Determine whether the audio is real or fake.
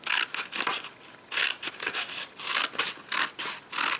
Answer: real